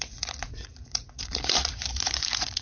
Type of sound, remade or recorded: remade